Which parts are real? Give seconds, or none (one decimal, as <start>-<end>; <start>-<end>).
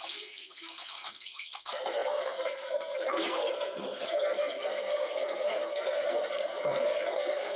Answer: none